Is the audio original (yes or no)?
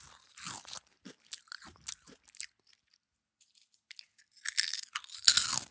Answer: yes